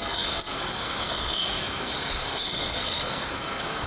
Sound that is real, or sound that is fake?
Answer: fake